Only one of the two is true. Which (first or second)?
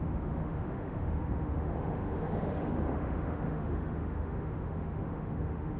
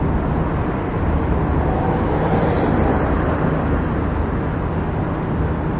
second